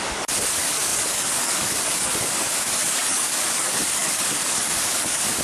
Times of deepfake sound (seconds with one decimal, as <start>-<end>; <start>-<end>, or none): 0.0-5.4